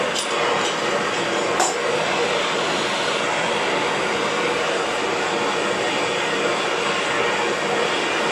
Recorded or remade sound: recorded